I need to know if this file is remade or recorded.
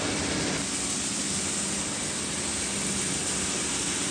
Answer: recorded